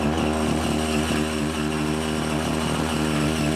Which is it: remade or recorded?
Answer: recorded